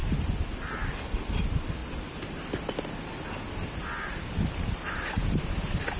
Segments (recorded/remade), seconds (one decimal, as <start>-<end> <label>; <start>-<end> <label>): 0.0-6.0 recorded